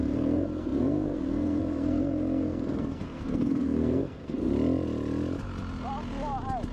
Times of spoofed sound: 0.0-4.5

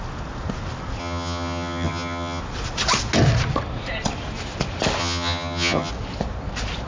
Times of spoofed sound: 1.0-2.4; 5.0-5.9

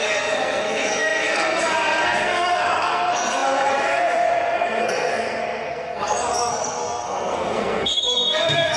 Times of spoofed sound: 0.0-8.8

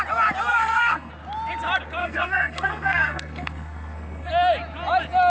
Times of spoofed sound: 0.5-1.1; 2.0-4.3